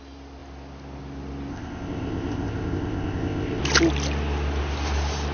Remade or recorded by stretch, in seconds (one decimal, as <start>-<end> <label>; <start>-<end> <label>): 0.0-1.5 recorded; 1.5-3.6 remade; 3.6-5.3 recorded